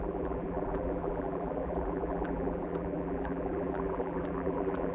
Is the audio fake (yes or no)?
yes